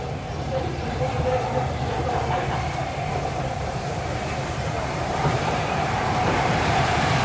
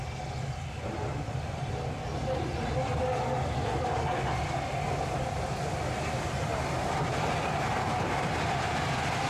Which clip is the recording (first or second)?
second